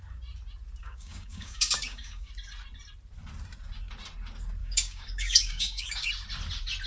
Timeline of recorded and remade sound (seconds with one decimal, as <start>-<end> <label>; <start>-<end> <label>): 0.0-0.8 recorded; 0.8-2.3 remade; 2.3-4.6 recorded; 4.6-6.1 remade; 6.1-6.9 recorded

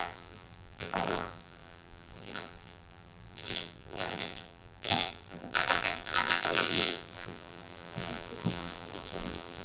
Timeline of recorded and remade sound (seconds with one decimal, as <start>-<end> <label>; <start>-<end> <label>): 0.0-9.6 remade

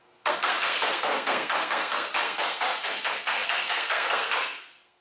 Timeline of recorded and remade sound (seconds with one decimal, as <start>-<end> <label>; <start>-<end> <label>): 0.0-5.0 remade

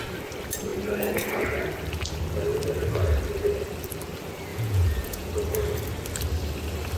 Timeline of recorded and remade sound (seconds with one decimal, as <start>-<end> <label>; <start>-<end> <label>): 0.0-4.5 recorded; 4.5-5.3 remade; 5.3-7.0 recorded

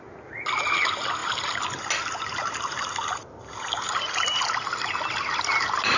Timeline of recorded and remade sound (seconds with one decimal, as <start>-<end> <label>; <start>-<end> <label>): 0.0-6.0 recorded

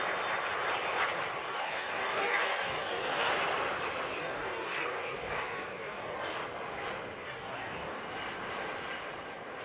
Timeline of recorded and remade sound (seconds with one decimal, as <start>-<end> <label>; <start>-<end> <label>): 0.0-1.5 recorded; 1.5-3.3 remade; 3.3-4.2 recorded; 4.2-6.4 remade; 6.4-7.2 recorded; 7.2-8.0 remade; 8.0-9.6 recorded

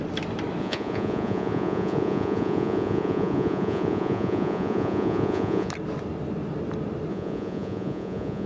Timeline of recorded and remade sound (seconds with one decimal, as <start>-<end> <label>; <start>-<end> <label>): 0.0-0.6 recorded; 0.6-5.7 remade; 5.7-7.1 recorded; 7.1-8.5 remade

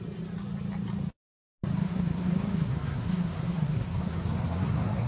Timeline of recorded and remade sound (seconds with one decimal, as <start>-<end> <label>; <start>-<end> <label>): 0.0-1.8 recorded; 1.8-5.1 remade